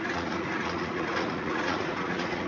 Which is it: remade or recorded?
remade